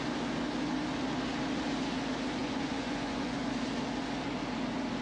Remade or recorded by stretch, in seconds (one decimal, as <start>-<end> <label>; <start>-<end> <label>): 0.0-2.4 recorded; 2.4-3.5 remade; 3.5-5.0 recorded

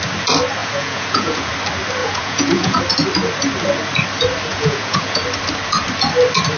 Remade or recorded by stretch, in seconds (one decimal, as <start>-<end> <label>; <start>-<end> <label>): 0.0-0.6 recorded; 0.6-1.5 remade; 1.5-2.0 recorded; 2.0-2.8 remade; 2.8-4.5 recorded; 4.5-5.2 remade; 5.2-6.6 recorded